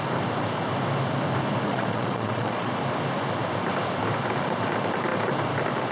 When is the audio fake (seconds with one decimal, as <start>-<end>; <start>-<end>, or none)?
1.7-2.7